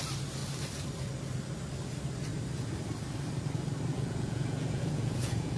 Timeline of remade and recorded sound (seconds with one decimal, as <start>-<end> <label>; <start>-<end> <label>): 0.0-3.9 recorded; 3.9-5.6 remade

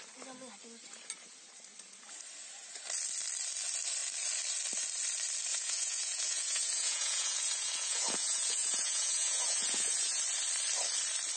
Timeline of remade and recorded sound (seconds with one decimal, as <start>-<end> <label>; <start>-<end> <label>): 0.0-5.5 recorded; 5.5-10.2 remade; 10.2-11.4 recorded

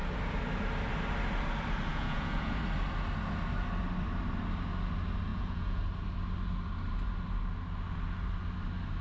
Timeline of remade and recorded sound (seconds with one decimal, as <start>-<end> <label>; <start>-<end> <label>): 0.0-1.9 recorded; 1.9-2.6 remade; 2.6-5.3 recorded; 5.3-5.8 remade; 5.8-9.0 recorded

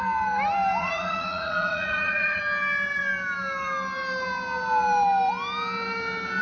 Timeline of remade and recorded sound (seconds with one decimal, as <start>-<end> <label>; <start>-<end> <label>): 0.0-0.8 recorded; 0.8-2.4 remade; 2.4-6.4 recorded

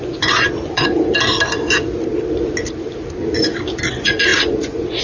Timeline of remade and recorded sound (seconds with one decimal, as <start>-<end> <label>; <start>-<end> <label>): 0.0-0.9 remade; 0.9-3.9 recorded; 3.9-5.0 remade

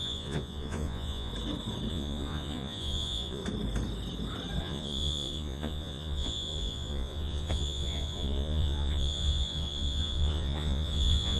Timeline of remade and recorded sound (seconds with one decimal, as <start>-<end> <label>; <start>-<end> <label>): 0.0-1.3 remade; 1.3-1.9 recorded; 1.9-3.4 remade; 3.4-4.6 recorded; 4.6-11.4 remade

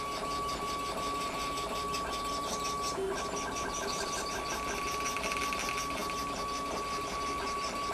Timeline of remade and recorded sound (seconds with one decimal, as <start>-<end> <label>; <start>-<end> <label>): 0.0-7.9 recorded